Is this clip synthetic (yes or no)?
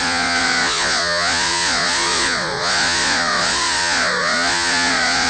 yes